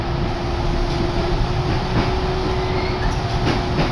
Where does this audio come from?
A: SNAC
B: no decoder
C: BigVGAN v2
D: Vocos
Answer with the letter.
B